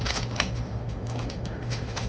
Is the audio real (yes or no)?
no